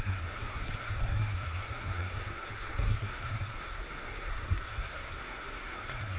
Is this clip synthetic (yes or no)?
yes